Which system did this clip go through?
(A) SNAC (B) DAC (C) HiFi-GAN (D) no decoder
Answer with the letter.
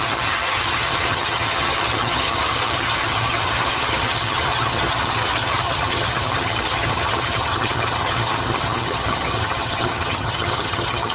C